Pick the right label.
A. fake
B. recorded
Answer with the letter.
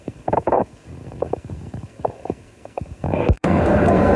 A